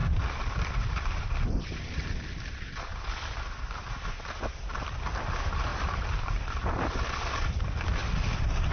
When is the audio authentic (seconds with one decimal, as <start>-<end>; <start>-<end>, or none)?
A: none